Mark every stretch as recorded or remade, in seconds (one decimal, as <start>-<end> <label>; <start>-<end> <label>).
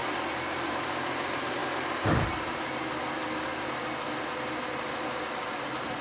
0.0-6.0 recorded